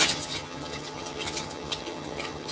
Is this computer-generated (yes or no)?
yes